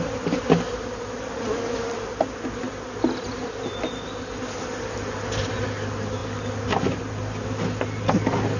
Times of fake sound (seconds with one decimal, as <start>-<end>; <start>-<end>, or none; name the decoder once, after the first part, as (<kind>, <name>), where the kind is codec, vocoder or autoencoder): none